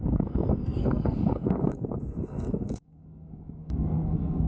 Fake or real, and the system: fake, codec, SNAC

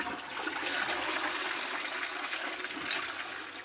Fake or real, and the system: real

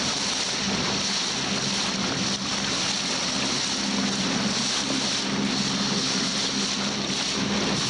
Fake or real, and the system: real